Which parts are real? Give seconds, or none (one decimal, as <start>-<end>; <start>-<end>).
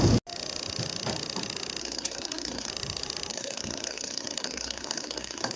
0.0-1.8; 2.7-3.3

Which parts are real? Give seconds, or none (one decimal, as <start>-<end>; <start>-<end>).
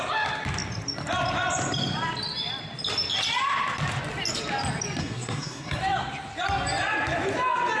0.0-5.0; 5.8-7.8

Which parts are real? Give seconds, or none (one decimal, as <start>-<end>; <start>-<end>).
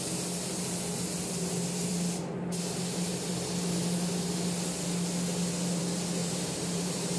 0.0-6.2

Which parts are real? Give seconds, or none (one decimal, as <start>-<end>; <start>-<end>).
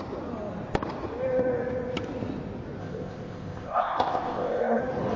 0.0-2.8; 4.8-5.2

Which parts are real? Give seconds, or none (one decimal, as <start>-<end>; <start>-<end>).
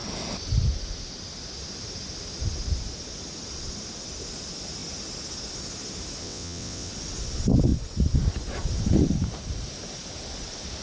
0.0-6.2; 6.9-10.8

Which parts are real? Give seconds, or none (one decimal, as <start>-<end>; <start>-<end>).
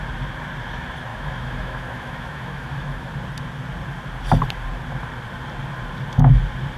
0.0-1.1; 3.1-6.8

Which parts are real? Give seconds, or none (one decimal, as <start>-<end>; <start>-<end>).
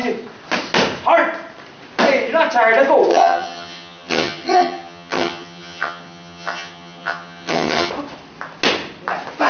0.0-3.1; 7.9-9.5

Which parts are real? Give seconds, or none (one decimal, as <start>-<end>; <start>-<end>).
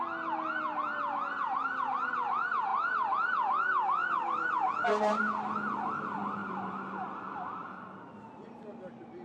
0.0-6.4; 7.1-7.6; 8.6-9.2